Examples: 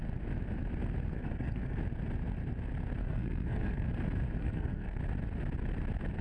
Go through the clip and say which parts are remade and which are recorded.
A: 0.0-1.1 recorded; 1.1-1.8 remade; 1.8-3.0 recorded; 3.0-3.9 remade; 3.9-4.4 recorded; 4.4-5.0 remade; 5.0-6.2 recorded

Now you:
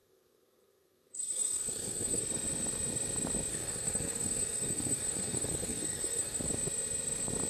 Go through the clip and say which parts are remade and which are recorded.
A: 0.0-2.2 remade; 2.2-3.5 recorded; 3.5-6.5 remade; 6.5-7.5 recorded

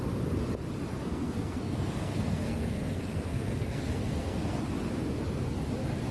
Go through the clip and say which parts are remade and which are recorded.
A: 0.0-0.9 recorded; 0.9-4.6 remade; 4.6-6.1 recorded

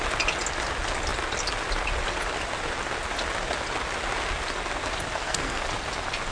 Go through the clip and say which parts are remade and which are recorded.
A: 0.0-5.2 recorded; 5.2-5.7 remade; 5.7-6.3 recorded

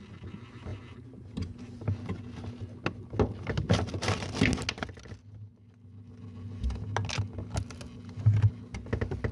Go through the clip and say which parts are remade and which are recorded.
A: 0.0-9.3 recorded

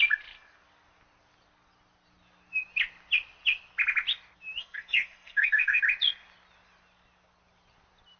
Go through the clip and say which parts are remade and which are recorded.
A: 0.0-4.6 recorded; 4.6-5.8 remade; 5.8-8.2 recorded

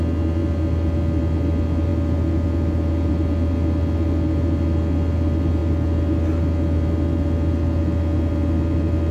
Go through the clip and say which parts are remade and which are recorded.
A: 0.0-9.1 recorded